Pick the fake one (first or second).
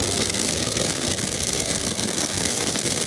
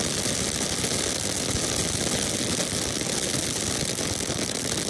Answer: first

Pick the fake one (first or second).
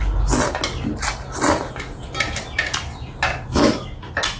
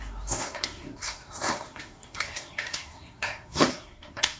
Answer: second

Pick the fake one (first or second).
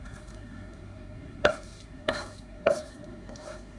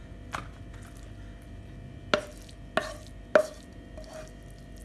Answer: first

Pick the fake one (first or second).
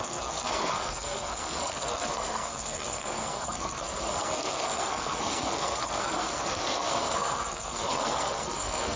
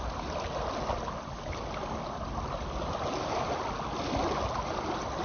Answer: first